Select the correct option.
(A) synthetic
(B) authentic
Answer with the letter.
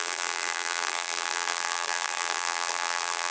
A